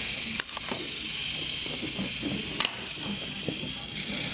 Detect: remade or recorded recorded